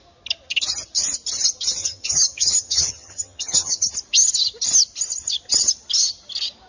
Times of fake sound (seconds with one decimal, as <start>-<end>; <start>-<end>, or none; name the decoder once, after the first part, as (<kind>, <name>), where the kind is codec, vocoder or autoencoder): 1.8-3.9 (vocoder, HiFi-GAN)